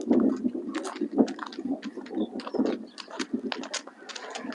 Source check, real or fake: real